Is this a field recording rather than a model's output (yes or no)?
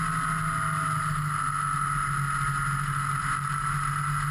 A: yes